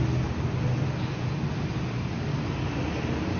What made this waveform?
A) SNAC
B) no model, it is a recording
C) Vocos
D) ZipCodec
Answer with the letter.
B